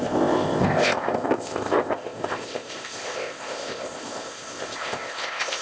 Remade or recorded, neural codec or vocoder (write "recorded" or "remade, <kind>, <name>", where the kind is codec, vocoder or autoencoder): remade, codec, ZipCodec